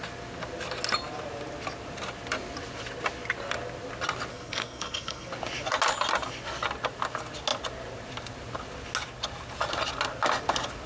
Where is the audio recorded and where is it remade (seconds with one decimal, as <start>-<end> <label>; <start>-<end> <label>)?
0.0-4.3 recorded; 4.3-5.3 remade; 5.3-10.9 recorded